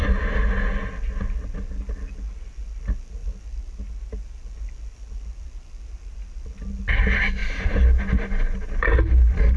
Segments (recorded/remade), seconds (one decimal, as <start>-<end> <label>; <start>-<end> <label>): 0.0-7.4 recorded; 7.4-9.6 remade